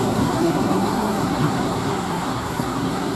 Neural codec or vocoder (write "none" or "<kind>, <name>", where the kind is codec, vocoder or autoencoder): codec, SNAC